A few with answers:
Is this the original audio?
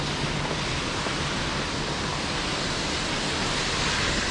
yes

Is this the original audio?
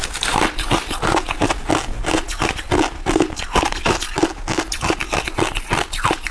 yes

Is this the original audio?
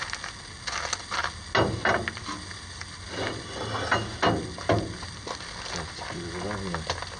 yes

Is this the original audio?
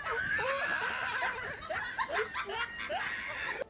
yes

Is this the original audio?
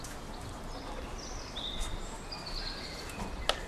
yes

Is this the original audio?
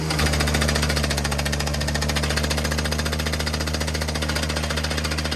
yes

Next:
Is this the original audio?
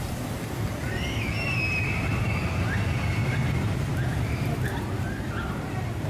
yes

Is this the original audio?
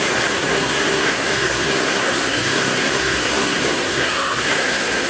no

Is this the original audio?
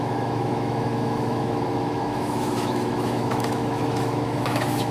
no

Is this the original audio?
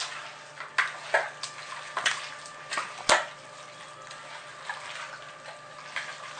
yes